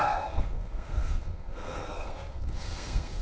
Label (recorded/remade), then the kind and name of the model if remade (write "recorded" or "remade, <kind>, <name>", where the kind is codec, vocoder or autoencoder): remade, codec, SNAC